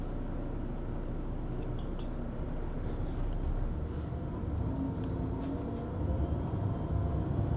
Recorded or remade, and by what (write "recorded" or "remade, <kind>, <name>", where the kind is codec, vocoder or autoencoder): recorded